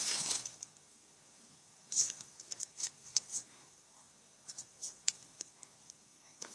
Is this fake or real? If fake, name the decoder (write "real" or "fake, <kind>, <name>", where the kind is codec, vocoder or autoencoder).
fake, codec, SNAC